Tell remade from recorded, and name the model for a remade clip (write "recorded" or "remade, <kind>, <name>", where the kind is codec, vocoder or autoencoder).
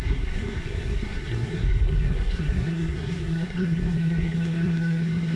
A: remade, codec, SNAC